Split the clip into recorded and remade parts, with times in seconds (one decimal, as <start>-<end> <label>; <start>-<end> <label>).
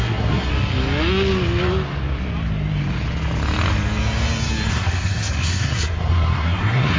0.0-0.5 remade; 0.5-4.7 recorded; 4.7-7.0 remade